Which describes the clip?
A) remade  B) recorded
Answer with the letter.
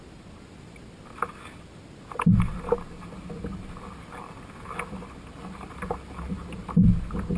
B